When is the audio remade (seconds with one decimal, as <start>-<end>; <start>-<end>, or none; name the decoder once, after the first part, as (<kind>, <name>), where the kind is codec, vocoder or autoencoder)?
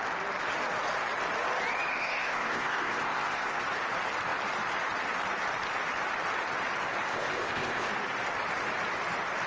1.9-3.6 (codec, ZipCodec); 7.1-7.9